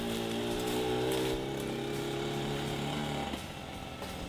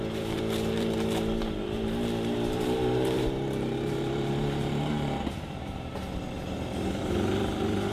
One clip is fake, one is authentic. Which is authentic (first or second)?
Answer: first